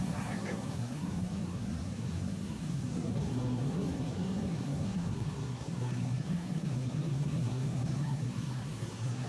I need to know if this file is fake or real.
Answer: fake